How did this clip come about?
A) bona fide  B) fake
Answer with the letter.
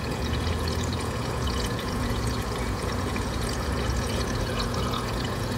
B